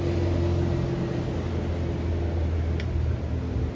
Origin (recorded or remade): recorded